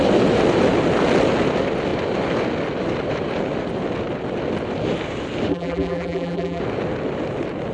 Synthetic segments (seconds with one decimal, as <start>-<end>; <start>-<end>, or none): 5.5-6.6